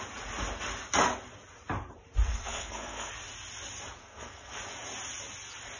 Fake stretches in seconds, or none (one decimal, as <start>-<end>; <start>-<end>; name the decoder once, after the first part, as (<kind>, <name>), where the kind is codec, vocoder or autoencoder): 2.3-3.1 (codec, SNAC); 4.0-4.6